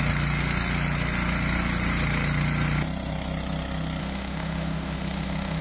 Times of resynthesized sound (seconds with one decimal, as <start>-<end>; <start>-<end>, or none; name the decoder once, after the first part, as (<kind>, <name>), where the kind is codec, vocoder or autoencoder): 4.0-5.6 (autoencoder, DAC-VAE)